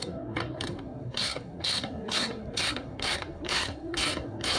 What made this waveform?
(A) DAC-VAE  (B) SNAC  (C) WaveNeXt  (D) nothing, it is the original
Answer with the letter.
B